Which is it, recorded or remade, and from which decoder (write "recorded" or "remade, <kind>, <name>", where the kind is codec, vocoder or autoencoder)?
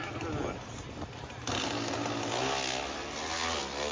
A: recorded